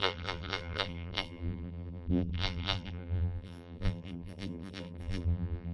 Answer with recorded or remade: remade